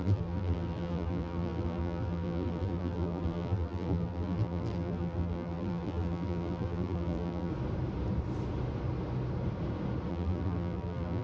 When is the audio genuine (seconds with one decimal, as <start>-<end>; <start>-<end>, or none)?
7.5-10.1